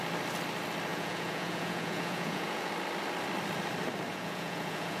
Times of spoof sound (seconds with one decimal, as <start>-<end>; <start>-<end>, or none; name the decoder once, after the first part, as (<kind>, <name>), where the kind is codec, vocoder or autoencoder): 0.9-2.7 (vocoder, Vocos); 4.1-5.0

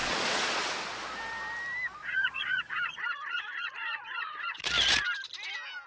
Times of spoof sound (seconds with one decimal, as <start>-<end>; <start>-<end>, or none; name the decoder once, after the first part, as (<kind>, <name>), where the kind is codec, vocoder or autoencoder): 0.0-0.6 (vocoder, Vocos); 2.0-4.7

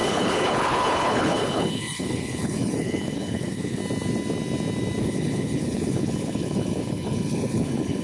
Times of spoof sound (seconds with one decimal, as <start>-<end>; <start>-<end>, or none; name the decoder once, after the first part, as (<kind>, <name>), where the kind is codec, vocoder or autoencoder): 0.0-3.8 (codec, HILCodec); 5.0-8.0